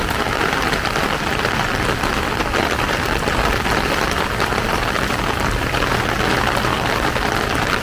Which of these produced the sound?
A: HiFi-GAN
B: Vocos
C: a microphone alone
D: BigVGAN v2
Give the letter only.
C